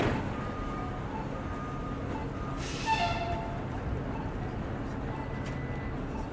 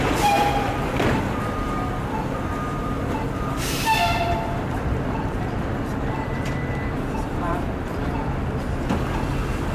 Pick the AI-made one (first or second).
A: second